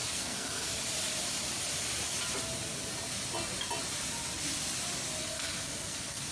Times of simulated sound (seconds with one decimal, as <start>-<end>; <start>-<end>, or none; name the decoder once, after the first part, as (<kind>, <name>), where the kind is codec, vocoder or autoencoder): 0.0-0.7 (codec, SNAC); 5.2-6.3